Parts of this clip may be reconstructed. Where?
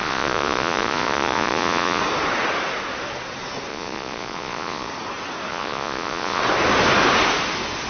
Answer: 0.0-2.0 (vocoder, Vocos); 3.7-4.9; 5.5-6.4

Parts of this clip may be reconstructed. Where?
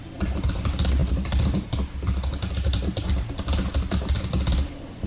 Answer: none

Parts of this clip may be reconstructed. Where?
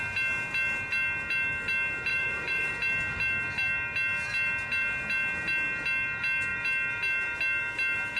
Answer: 2.1-2.7 (vocoder, BigVGAN v2)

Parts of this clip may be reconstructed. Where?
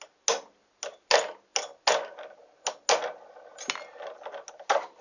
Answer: none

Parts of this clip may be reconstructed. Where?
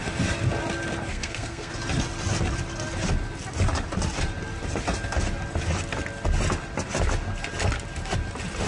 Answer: 1.1-1.7 (codec, SNAC)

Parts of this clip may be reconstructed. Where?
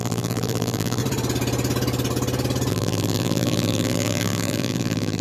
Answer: 0.0-1.0 (vocoder, BigVGAN v2); 2.7-5.2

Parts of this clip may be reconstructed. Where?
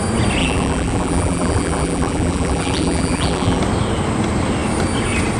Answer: 0.4-3.6 (vocoder, BigVGAN v2)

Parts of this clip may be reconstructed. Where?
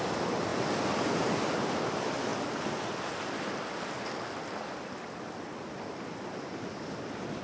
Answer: none